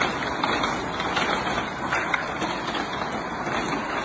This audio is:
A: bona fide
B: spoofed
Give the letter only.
A